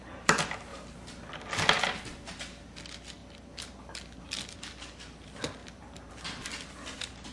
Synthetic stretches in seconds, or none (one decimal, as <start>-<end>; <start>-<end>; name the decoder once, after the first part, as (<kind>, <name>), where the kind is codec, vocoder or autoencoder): 5.6-6.1 (vocoder, BigVGAN v2)